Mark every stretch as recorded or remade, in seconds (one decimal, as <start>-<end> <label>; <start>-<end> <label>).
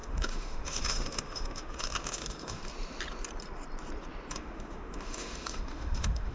0.0-2.6 remade; 2.6-4.3 recorded; 4.3-6.3 remade